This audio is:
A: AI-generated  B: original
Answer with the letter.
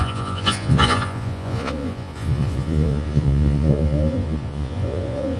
A